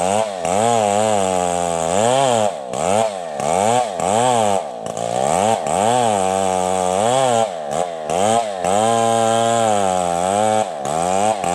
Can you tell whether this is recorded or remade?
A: recorded